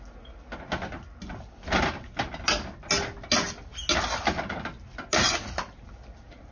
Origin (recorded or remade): recorded